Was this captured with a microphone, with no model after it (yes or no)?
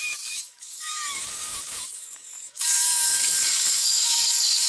no